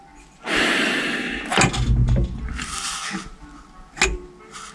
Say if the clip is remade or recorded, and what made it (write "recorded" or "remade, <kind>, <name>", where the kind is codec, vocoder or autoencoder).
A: recorded